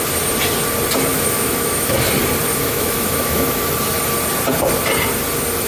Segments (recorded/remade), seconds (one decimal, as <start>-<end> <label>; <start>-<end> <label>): 0.0-1.1 recorded; 1.1-2.1 remade; 2.1-2.5 recorded; 2.5-3.6 remade; 3.6-5.7 recorded

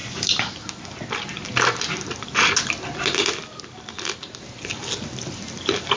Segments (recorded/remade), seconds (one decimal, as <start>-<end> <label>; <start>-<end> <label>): 0.0-6.0 recorded

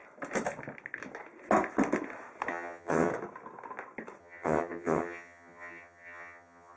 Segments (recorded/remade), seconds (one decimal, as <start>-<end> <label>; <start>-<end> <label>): 0.0-2.5 recorded; 2.5-3.1 remade; 3.1-4.2 recorded; 4.2-6.8 remade

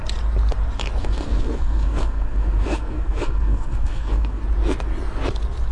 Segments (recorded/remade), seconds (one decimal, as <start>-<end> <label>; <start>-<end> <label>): 0.0-1.0 recorded; 1.0-4.4 remade; 4.4-5.7 recorded

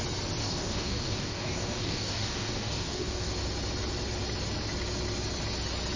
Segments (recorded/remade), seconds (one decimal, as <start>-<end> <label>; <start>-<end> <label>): 0.0-0.4 recorded; 0.4-3.3 remade; 3.3-6.0 recorded

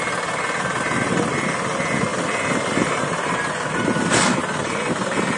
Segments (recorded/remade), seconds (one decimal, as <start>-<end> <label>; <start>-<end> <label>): 0.0-2.1 recorded; 2.1-3.7 remade; 3.7-4.4 recorded; 4.4-5.4 remade

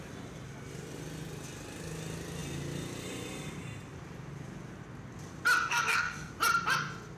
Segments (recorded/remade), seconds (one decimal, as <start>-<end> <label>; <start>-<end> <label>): 0.0-5.7 recorded; 5.7-6.3 remade; 6.3-7.2 recorded

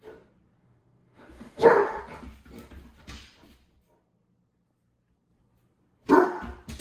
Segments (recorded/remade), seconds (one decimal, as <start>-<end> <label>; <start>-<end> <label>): 0.0-0.6 recorded; 0.6-2.0 remade; 2.0-6.8 recorded